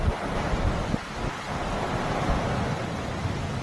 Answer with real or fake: real